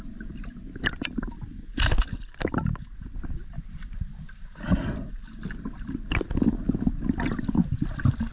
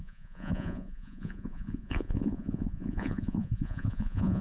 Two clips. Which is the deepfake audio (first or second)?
second